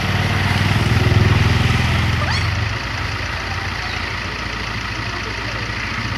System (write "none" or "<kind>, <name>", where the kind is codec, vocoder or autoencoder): none